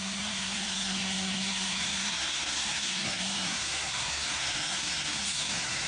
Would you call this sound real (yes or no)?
no